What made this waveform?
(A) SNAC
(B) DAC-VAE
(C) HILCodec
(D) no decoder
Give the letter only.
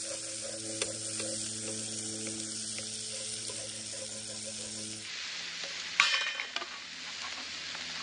D